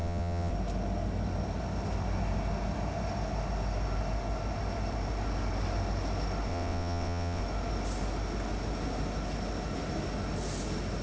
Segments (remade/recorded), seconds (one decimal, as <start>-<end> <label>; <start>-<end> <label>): 0.0-0.5 remade; 0.5-6.5 recorded; 6.5-7.4 remade; 7.4-11.0 recorded